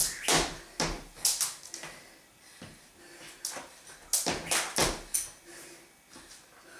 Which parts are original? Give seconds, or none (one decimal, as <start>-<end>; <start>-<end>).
0.0-6.8